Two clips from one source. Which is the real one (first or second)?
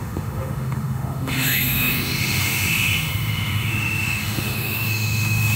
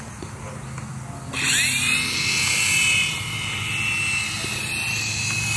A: second